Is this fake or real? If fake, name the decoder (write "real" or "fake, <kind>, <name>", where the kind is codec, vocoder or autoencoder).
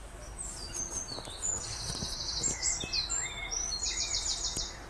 real